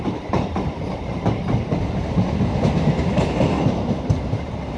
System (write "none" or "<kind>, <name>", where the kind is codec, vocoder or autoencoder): none